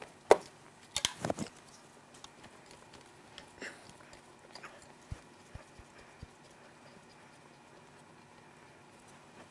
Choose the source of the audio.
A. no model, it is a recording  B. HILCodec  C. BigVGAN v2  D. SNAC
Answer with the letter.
A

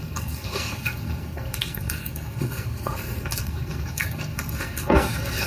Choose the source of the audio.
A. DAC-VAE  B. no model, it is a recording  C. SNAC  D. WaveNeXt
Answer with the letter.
C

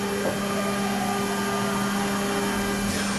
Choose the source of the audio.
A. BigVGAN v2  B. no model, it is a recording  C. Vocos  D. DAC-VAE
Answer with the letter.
B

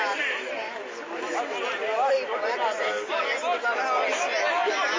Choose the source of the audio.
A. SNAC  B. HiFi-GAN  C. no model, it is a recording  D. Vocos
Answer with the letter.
C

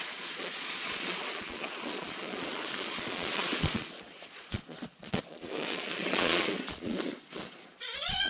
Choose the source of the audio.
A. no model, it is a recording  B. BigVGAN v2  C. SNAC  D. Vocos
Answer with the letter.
D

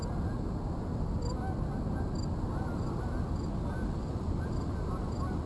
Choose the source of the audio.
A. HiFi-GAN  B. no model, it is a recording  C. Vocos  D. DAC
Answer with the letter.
B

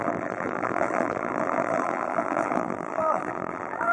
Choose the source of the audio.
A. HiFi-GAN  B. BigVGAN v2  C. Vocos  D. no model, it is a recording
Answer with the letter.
B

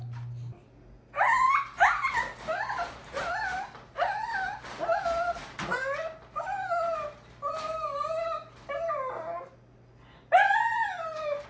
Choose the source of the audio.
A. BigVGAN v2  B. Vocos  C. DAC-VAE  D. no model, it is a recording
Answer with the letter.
D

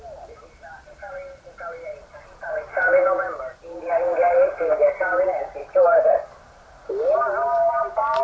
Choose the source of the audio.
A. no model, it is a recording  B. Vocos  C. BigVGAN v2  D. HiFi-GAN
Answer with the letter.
C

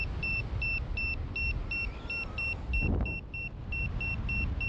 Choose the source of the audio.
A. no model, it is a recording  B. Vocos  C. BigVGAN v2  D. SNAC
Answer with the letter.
A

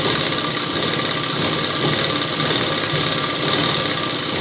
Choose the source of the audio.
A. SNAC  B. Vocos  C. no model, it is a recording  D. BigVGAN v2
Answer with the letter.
C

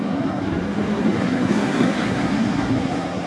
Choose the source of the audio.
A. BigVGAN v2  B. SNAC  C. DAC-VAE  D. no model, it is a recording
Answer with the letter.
B